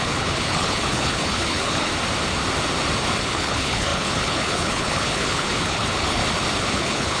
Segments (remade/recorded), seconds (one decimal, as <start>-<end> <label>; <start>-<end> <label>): 0.0-1.9 remade; 1.9-3.2 recorded; 3.2-6.2 remade; 6.2-6.7 recorded; 6.7-7.2 remade